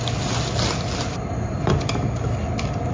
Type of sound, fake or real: real